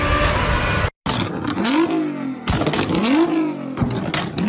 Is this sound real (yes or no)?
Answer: yes